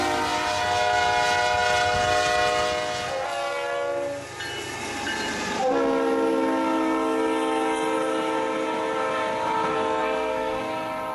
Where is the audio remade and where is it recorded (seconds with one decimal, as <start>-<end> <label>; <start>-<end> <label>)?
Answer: 0.0-9.7 recorded; 9.7-10.6 remade; 10.6-11.1 recorded